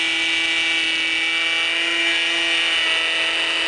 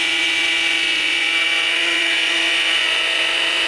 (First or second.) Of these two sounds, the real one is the first